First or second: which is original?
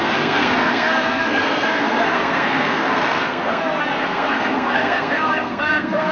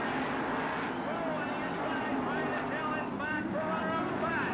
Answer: second